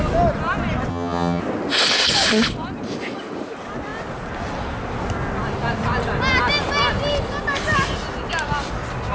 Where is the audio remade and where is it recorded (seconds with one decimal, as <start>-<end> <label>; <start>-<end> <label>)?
0.0-0.9 recorded; 0.9-1.4 remade; 1.4-9.1 recorded